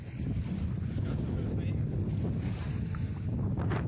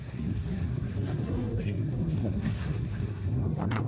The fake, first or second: second